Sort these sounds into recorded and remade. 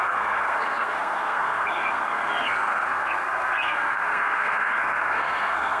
remade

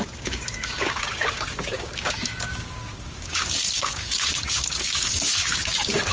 remade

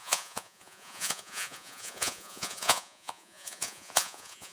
remade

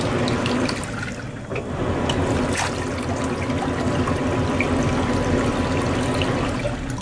recorded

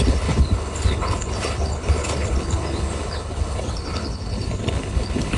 remade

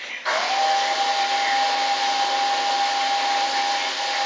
recorded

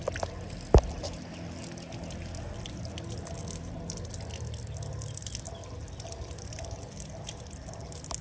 recorded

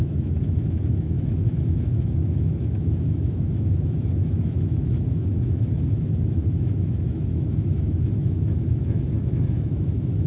remade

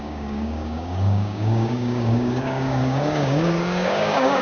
remade